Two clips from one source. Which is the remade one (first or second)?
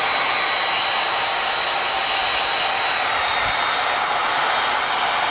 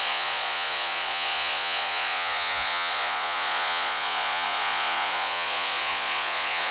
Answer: second